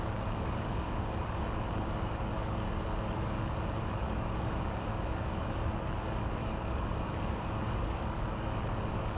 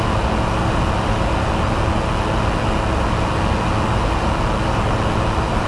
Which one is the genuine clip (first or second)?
second